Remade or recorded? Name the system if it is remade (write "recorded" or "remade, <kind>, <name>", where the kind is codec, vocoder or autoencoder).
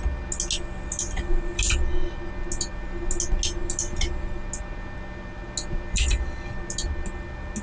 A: recorded